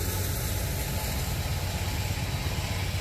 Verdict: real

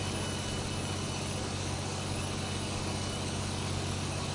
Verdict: fake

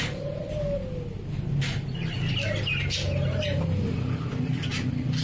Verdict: real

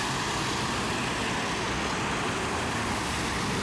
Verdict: real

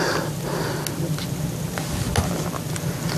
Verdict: real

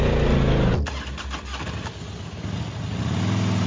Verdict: real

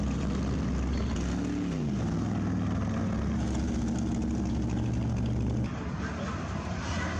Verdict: real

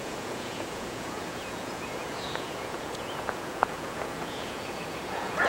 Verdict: fake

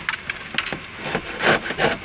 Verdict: real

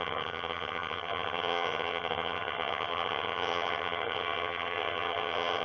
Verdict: fake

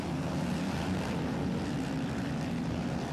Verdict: real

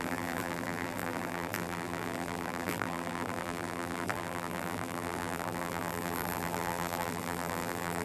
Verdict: fake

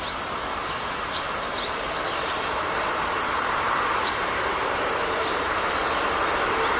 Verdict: fake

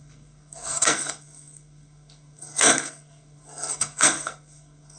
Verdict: fake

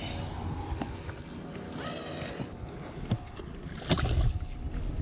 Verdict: real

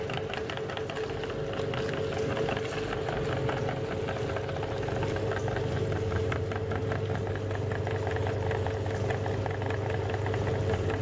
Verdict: real